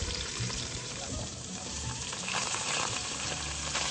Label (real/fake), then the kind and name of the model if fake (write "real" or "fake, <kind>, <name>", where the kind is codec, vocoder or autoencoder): fake, vocoder, BigVGAN v2